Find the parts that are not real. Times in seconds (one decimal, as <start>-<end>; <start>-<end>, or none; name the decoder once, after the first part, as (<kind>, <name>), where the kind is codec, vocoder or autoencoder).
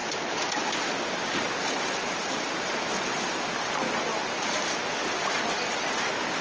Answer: 4.1-5.0 (vocoder, BigVGAN v2)